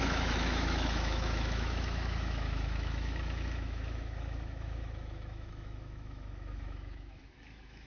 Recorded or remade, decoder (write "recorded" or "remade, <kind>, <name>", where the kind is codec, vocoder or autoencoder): remade, autoencoder, DAC-VAE